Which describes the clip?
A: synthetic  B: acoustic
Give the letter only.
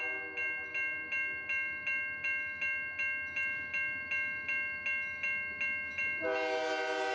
B